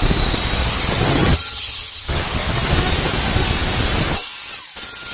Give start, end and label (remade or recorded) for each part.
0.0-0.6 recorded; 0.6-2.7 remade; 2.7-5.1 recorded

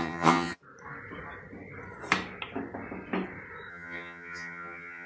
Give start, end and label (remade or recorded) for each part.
0.0-0.6 remade; 0.6-3.7 recorded; 3.7-5.1 remade

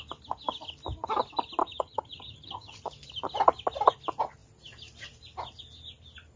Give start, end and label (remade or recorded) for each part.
0.0-1.6 recorded; 1.6-2.8 remade; 2.8-6.4 recorded

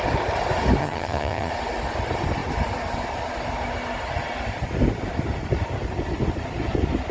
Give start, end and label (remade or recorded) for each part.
0.0-0.8 recorded; 0.8-1.5 remade; 1.5-7.1 recorded

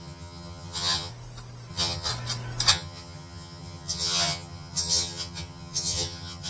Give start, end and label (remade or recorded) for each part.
0.0-1.1 remade; 1.1-1.7 recorded; 1.7-2.1 remade; 2.1-2.7 recorded; 2.7-6.5 remade

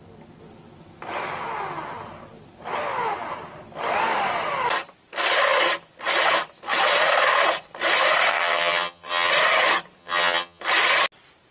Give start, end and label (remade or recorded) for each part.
0.0-8.3 recorded; 8.3-9.3 remade; 9.3-10.0 recorded; 10.0-10.6 remade; 10.6-11.5 recorded

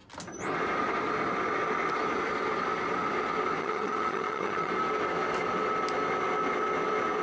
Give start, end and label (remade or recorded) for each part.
0.0-3.6 recorded; 3.6-4.7 remade; 4.7-7.2 recorded

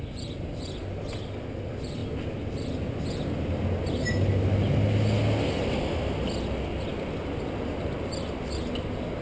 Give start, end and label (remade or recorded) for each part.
0.0-9.2 recorded